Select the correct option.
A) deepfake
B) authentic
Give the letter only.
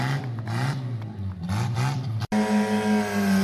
B